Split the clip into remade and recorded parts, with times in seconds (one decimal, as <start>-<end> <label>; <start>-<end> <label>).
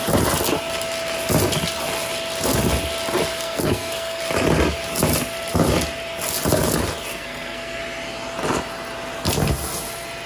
0.0-3.3 recorded; 3.3-4.2 remade; 4.2-7.1 recorded; 7.1-7.8 remade; 7.8-10.3 recorded